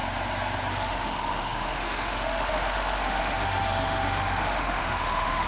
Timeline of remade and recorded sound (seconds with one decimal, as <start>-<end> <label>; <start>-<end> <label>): 0.0-0.7 recorded; 0.7-5.5 remade